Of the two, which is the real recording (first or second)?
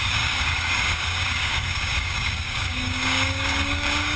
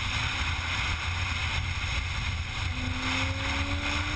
second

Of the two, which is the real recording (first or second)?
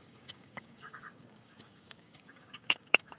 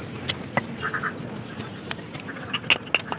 second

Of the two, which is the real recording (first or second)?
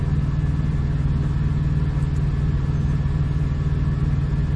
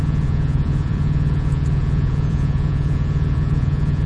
first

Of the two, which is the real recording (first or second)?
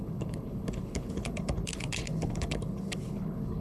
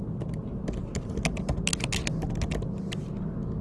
second